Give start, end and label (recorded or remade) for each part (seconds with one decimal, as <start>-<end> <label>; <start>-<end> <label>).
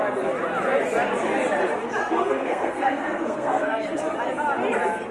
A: 0.0-2.0 recorded; 2.0-3.8 remade; 3.8-5.1 recorded